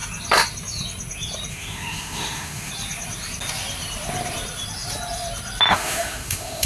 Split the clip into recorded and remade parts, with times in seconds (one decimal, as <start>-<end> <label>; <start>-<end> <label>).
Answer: 0.0-1.5 recorded; 1.5-2.7 remade; 2.7-5.7 recorded; 5.7-6.7 remade